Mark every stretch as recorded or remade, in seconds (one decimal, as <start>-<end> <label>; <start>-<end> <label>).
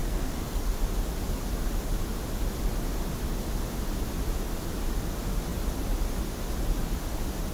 0.0-0.8 remade; 0.8-7.5 recorded